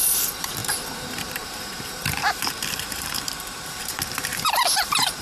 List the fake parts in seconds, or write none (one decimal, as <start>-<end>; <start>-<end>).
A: 0.0-5.2